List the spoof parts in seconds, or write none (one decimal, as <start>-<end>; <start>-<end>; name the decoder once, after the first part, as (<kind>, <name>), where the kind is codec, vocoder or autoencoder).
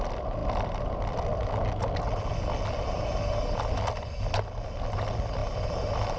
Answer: none